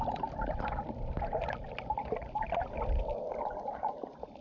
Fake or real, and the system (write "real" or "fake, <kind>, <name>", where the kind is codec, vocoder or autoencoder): fake, vocoder, BigVGAN v2